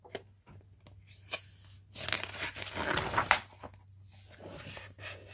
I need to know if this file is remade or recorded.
recorded